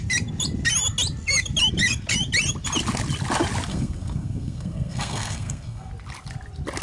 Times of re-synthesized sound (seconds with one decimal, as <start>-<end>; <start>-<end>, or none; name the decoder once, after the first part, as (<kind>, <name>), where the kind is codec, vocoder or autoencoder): 3.7-5.9 (codec, SNAC)